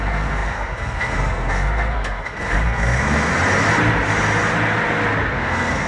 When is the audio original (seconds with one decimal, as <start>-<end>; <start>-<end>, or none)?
3.3-5.3

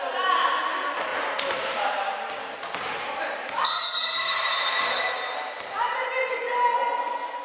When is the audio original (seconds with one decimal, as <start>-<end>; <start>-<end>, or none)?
0.0-1.1; 1.9-2.9; 5.3-7.4

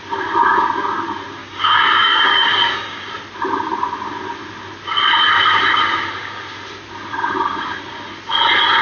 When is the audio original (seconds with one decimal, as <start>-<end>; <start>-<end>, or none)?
0.0-1.4; 3.1-8.8

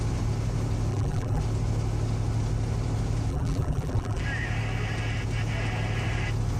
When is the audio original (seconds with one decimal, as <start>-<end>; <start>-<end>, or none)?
0.0-0.9; 1.4-3.3; 4.2-6.6

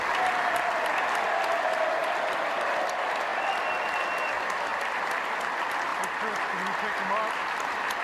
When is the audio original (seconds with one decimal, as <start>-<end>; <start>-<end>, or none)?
0.0-2.0; 2.5-8.0

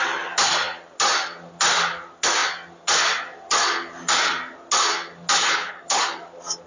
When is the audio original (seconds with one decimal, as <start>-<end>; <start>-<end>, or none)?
0.0-5.4; 6.0-6.7